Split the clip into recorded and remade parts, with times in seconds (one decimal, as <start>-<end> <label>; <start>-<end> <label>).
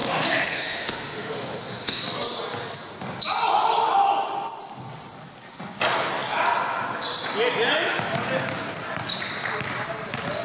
0.0-2.0 remade; 2.0-10.4 recorded